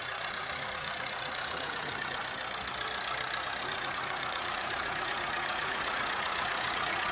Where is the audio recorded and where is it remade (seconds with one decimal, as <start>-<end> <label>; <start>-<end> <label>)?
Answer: 0.0-2.2 remade; 2.2-3.6 recorded; 3.6-7.1 remade